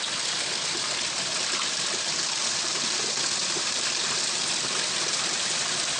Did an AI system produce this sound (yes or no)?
no